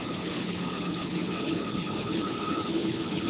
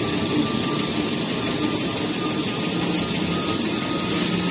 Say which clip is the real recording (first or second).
second